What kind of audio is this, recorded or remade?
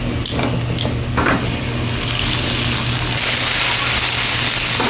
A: recorded